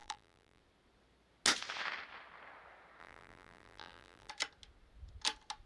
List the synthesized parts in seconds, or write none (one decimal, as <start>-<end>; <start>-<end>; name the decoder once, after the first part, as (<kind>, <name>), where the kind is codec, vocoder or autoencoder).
0.0-0.6 (vocoder, BigVGAN v2); 3.0-4.3